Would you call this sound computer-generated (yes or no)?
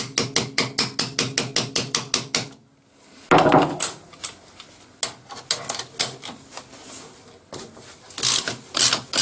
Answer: no